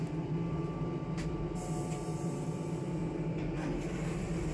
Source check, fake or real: real